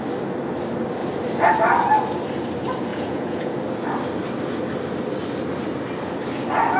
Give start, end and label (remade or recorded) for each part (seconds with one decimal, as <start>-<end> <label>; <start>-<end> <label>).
0.0-2.9 recorded; 2.9-3.5 remade; 3.5-6.8 recorded